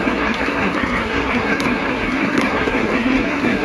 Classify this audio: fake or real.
fake